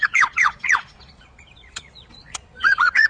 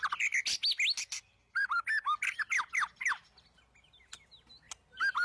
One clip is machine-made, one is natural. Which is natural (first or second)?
second